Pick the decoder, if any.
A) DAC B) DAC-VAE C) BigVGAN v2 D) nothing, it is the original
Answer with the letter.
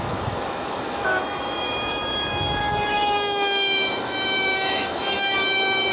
B